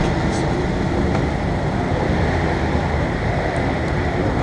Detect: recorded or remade recorded